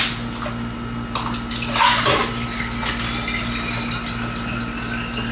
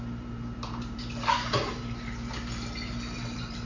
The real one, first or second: first